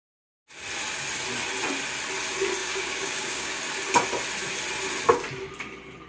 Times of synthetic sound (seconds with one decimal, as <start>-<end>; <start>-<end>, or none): 2.6-3.6